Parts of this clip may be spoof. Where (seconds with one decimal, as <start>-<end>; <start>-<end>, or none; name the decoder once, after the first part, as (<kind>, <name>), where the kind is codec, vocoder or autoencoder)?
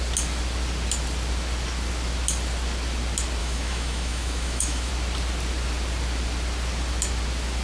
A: 3.4-4.9 (autoencoder, DAC-VAE)